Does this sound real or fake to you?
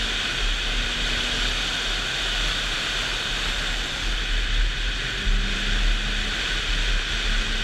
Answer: real